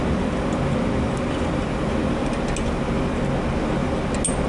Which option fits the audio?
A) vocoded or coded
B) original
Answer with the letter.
B